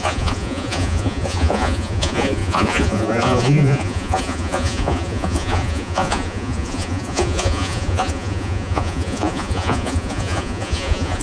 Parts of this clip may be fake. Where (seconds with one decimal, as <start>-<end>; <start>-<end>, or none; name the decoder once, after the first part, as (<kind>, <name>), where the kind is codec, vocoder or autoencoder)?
0.0-11.2 (vocoder, Vocos)